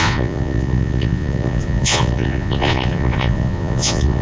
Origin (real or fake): fake